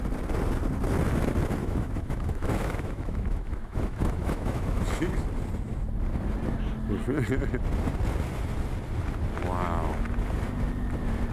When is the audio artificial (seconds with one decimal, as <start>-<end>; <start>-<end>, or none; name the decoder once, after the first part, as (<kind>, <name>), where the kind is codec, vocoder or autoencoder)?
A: 1.6-4.8 (autoencoder, DAC-VAE)